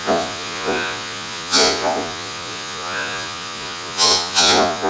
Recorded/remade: remade